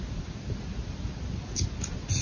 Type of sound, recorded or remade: recorded